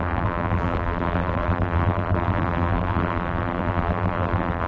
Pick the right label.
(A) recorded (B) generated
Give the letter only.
B